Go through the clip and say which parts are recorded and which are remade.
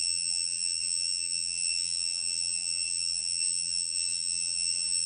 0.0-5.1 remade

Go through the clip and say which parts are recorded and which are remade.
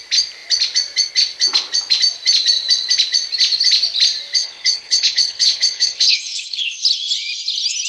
0.0-4.4 recorded; 4.4-6.8 remade; 6.8-7.9 recorded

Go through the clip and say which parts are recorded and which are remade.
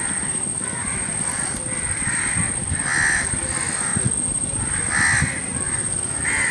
0.0-6.5 recorded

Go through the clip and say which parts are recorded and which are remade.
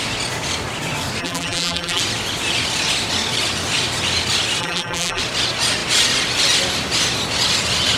0.0-1.2 recorded; 1.2-2.0 remade; 2.0-4.6 recorded; 4.6-5.2 remade; 5.2-8.0 recorded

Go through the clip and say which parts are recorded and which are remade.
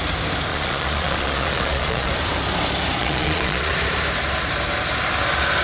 0.0-0.5 recorded; 0.5-2.1 remade; 2.1-3.0 recorded; 3.0-3.7 remade; 3.7-5.6 recorded